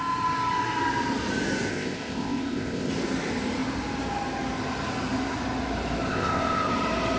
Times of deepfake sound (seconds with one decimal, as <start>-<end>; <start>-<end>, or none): 1.7-2.9; 6.1-6.7